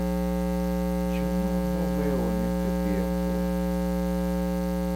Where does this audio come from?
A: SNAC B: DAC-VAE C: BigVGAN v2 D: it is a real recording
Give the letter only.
D